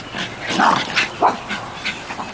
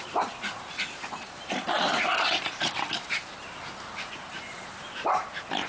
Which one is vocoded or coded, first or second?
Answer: second